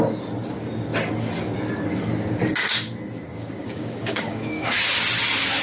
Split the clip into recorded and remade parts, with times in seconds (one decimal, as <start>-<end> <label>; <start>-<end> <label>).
0.0-3.3 recorded; 3.3-4.7 remade; 4.7-5.6 recorded